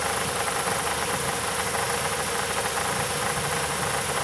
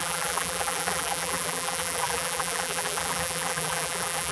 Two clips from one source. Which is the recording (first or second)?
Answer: first